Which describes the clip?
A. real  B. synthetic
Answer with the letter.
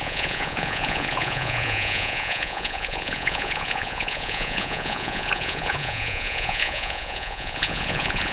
B